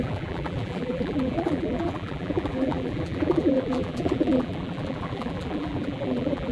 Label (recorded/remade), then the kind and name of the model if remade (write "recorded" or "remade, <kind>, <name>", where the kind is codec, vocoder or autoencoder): remade, vocoder, BigVGAN v2